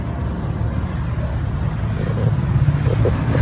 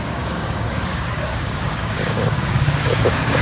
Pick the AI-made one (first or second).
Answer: second